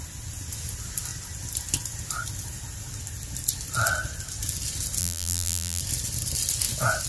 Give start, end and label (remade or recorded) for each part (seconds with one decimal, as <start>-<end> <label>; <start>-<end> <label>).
0.0-5.0 recorded; 5.0-5.8 remade; 5.8-7.1 recorded